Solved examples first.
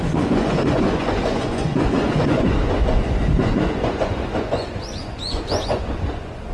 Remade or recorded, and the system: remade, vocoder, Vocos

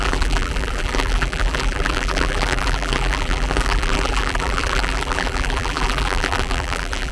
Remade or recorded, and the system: remade, vocoder, BigVGAN v2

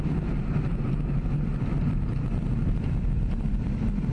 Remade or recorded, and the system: remade, vocoder, BigVGAN v2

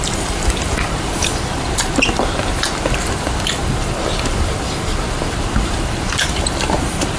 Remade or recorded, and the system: remade, vocoder, BigVGAN v2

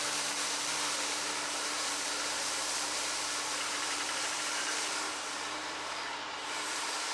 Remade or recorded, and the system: remade, vocoder, BigVGAN v2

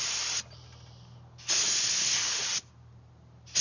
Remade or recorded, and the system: recorded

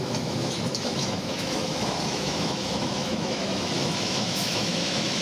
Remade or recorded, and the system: remade, autoencoder, DAC-VAE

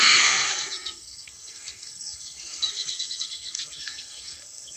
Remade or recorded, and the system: remade, codec, SNAC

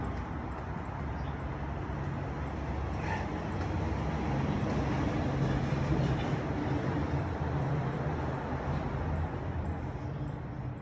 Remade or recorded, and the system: recorded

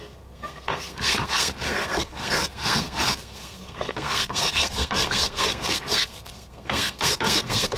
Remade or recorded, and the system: remade, codec, SNAC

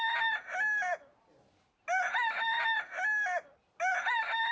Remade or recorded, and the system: recorded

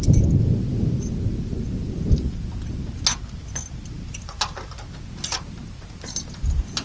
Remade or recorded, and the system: recorded